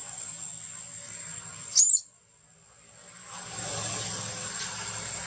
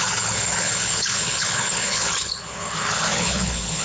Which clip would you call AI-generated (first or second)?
second